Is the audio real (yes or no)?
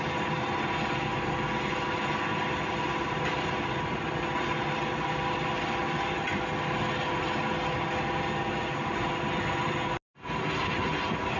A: yes